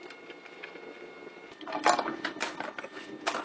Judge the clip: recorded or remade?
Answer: recorded